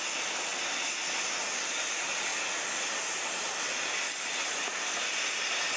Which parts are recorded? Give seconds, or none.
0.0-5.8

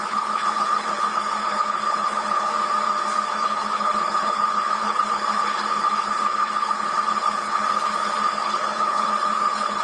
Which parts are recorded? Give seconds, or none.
2.5-3.2

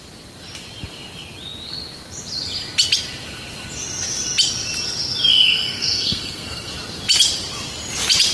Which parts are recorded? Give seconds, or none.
0.0-5.3; 6.7-8.3

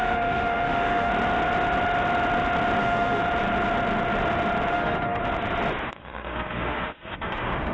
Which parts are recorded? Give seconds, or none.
1.1-2.8; 3.2-4.7; 5.2-5.9

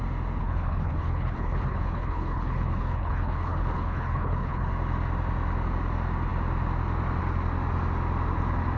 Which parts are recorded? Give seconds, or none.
0.0-0.4; 4.7-8.8

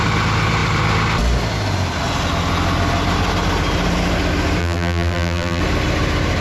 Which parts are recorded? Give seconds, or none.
0.0-4.6; 5.6-6.4

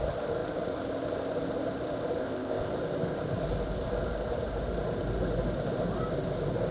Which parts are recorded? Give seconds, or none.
0.0-2.2; 2.7-6.7

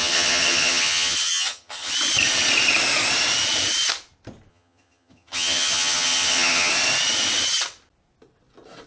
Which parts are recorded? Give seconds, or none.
1.9-4.5; 6.7-8.9